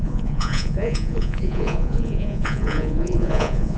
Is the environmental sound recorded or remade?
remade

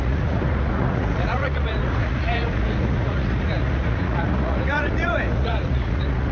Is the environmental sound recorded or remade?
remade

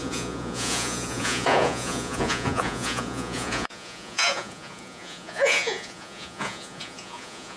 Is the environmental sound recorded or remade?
remade